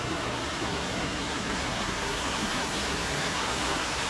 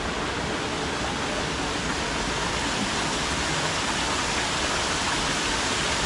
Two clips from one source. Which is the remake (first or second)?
first